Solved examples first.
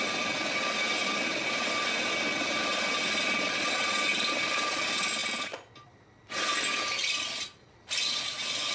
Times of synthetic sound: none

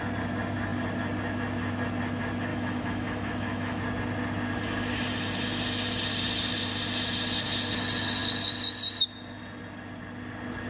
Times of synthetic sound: 2.5-3.8

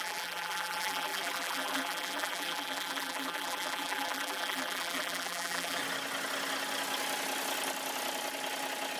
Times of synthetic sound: 0.0-5.8

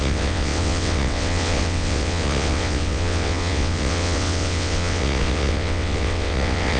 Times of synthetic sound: 0.0-6.8

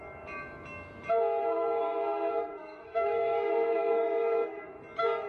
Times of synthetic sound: 1.4-4.6

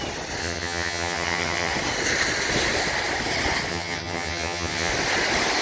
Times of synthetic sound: 0.4-1.7; 3.7-4.9

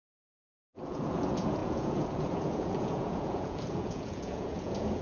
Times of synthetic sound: 0.0-5.0

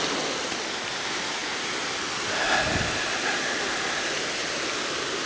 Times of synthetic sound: none